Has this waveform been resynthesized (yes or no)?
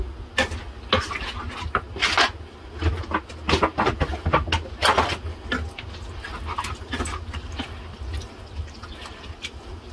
no